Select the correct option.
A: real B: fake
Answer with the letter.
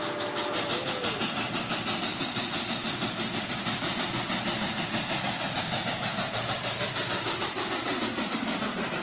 A